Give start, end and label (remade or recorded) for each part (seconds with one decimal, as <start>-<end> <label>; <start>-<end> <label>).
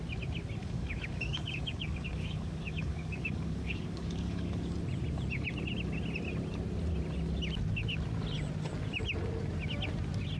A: 0.0-0.6 recorded; 0.6-4.7 remade; 4.7-10.4 recorded